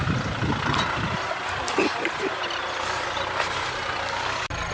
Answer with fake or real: real